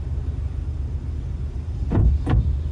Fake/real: fake